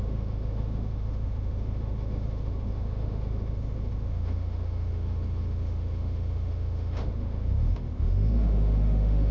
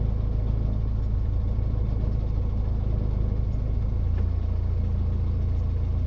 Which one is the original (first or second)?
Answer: second